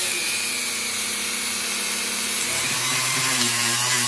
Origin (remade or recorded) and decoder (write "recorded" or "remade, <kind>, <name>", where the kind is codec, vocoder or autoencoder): remade, vocoder, BigVGAN v2